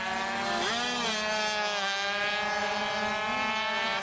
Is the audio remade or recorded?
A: recorded